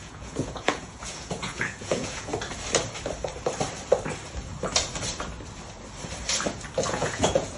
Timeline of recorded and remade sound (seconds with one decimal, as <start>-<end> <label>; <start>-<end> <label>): 0.0-2.3 remade; 2.3-6.9 recorded; 6.9-7.6 remade